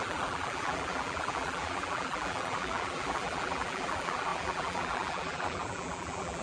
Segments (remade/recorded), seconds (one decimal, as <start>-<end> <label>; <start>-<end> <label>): 0.0-6.4 remade